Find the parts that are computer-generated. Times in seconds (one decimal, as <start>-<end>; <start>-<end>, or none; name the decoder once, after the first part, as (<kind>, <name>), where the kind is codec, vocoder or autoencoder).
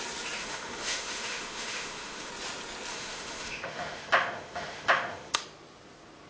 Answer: 0.4-2.3 (autoencoder, DAC-VAE); 2.9-5.4